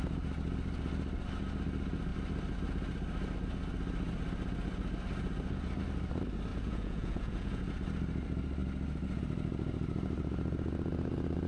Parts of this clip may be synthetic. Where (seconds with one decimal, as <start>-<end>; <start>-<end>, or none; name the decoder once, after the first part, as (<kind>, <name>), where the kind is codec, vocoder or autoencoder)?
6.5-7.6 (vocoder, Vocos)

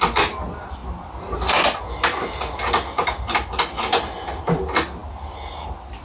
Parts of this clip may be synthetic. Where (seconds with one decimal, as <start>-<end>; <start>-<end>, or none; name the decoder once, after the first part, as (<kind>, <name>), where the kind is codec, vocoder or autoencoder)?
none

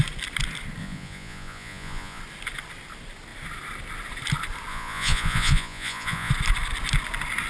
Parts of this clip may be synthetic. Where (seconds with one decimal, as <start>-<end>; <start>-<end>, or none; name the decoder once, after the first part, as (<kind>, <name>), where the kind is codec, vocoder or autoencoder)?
0.8-2.2 (vocoder, Vocos); 4.7-6.3

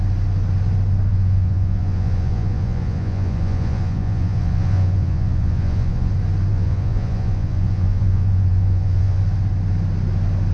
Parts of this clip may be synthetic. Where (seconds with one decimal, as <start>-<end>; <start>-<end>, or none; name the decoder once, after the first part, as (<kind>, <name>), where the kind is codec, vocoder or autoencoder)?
1.1-6.1 (vocoder, Vocos); 6.5-9.2

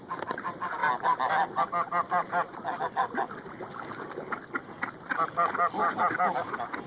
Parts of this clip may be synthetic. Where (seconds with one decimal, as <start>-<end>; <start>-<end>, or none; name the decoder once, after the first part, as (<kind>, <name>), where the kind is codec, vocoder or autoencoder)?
none

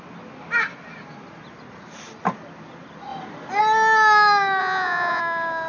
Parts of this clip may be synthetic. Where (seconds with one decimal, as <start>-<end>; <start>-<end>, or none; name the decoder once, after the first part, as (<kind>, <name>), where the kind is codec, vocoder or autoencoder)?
4.6-5.2 (vocoder, Vocos)

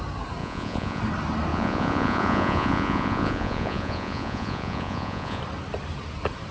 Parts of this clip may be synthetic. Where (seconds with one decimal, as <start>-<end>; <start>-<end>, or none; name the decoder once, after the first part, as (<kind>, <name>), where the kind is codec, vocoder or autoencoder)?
0.4-1.0 (vocoder, Vocos); 1.5-5.4

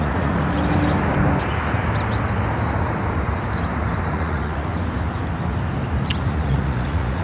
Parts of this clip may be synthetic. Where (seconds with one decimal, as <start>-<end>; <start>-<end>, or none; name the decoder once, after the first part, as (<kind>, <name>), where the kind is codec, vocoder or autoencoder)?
0.0-0.4 (vocoder, Vocos); 4.1-4.7; 6.2-7.2